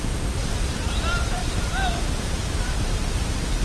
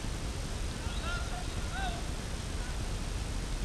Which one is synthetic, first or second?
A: first